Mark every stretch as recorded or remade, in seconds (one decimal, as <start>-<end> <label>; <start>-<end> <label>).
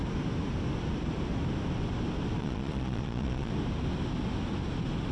0.0-2.4 recorded; 2.4-3.5 remade; 3.5-5.1 recorded